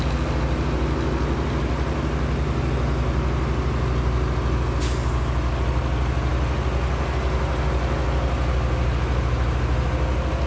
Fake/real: real